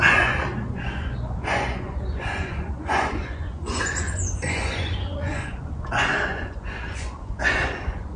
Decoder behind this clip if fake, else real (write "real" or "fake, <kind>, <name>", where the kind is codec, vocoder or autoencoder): fake, vocoder, Vocos